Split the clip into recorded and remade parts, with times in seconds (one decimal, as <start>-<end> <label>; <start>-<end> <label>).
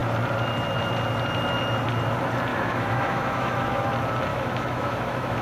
0.0-2.5 recorded; 2.5-3.9 remade; 3.9-4.3 recorded; 4.3-5.4 remade